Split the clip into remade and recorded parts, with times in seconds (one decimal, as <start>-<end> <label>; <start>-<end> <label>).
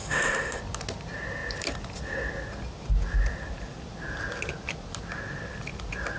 0.0-0.6 remade; 0.6-6.2 recorded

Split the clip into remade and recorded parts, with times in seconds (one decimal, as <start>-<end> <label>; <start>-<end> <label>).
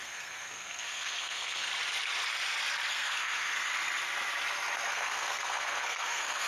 0.0-1.7 remade; 1.7-2.9 recorded; 2.9-3.7 remade; 3.7-4.9 recorded; 4.9-6.5 remade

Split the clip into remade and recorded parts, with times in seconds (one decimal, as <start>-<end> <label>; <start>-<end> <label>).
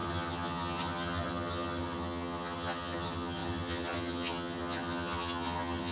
0.0-5.9 remade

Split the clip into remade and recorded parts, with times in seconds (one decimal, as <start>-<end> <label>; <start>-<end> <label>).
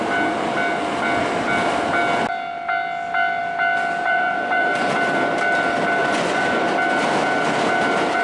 0.0-4.0 recorded; 4.0-4.9 remade; 4.9-6.0 recorded; 6.0-6.6 remade; 6.6-8.2 recorded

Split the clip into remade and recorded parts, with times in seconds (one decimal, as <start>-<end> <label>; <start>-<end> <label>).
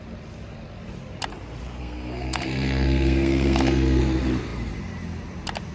0.0-1.8 recorded; 1.8-4.0 remade; 4.0-5.7 recorded